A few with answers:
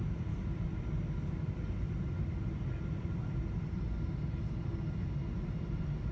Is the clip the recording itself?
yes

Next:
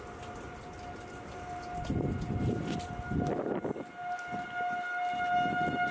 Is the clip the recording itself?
yes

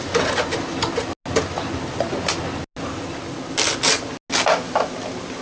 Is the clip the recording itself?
yes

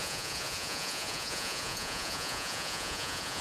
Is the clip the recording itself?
no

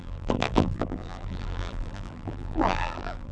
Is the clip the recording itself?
no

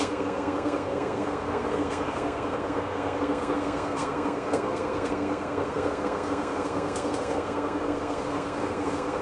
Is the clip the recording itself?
no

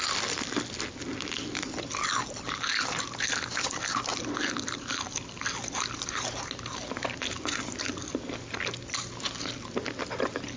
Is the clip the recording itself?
yes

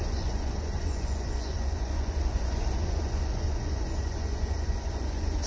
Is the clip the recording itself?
no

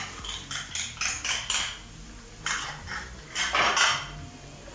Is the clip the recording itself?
yes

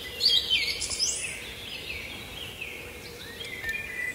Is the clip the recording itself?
yes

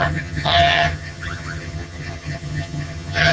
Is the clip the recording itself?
no